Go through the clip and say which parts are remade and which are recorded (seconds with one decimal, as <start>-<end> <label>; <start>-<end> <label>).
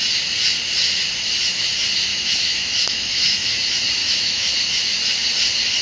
0.0-2.1 recorded; 2.1-3.6 remade; 3.6-4.0 recorded; 4.0-4.5 remade; 4.5-5.8 recorded